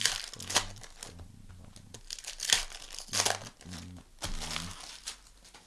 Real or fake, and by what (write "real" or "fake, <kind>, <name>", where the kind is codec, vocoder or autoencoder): real